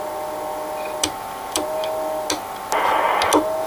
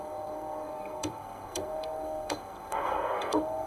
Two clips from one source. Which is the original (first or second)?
first